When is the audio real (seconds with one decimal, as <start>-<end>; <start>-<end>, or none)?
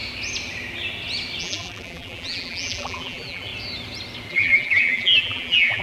0.0-1.4; 3.5-4.3